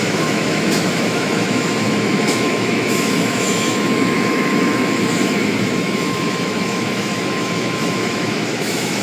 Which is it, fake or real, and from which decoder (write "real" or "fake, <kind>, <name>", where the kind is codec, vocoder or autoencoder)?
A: fake, autoencoder, DAC-VAE